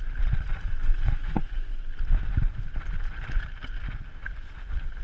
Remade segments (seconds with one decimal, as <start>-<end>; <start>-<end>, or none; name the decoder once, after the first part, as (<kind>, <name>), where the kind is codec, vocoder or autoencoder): 0.8-1.8 (vocoder, Vocos)